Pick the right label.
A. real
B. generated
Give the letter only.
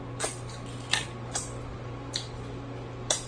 A